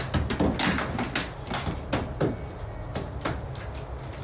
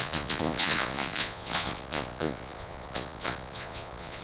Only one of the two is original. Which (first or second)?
first